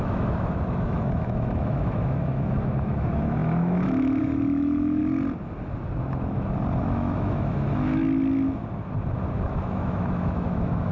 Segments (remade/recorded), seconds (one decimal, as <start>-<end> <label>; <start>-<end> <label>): 0.0-5.0 remade; 5.0-6.8 recorded; 6.8-8.0 remade; 8.0-9.4 recorded; 9.4-10.9 remade